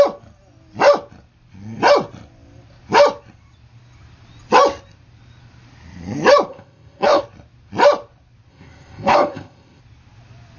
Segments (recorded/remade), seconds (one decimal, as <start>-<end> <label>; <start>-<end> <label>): 0.0-6.5 recorded; 6.5-7.2 remade; 7.2-8.5 recorded; 8.5-9.8 remade; 9.8-10.6 recorded